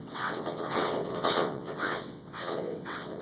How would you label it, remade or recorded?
remade